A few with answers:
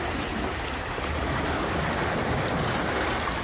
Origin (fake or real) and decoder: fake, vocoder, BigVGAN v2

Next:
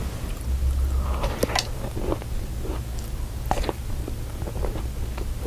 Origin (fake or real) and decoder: real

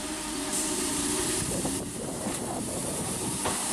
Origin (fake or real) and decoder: fake, vocoder, BigVGAN v2